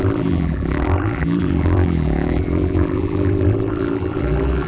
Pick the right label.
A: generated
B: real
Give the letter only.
A